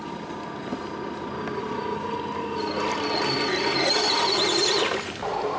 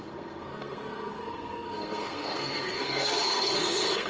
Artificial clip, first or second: second